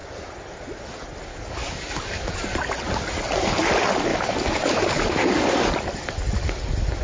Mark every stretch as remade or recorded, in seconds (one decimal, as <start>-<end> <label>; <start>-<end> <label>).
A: 0.0-1.3 recorded; 1.3-2.5 remade; 2.5-4.1 recorded; 4.1-5.7 remade; 5.7-7.0 recorded